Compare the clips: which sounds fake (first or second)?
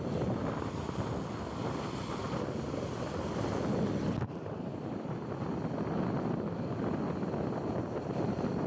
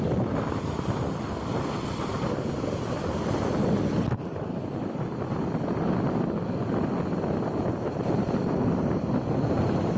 second